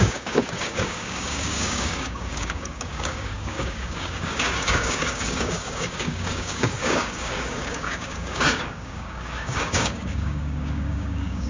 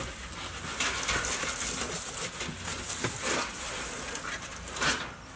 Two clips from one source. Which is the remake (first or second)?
first